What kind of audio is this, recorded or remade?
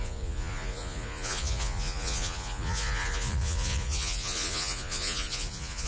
remade